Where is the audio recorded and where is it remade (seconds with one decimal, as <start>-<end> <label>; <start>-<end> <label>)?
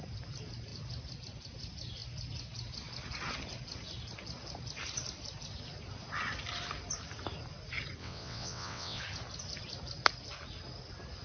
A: 0.0-8.0 recorded; 8.0-9.0 remade; 9.0-11.2 recorded